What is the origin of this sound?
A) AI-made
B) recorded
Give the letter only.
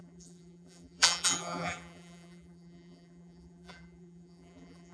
A